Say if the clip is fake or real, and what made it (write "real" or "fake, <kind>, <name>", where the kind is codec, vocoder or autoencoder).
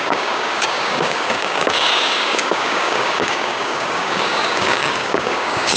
fake, codec, DAC